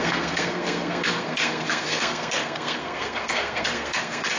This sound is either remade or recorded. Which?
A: remade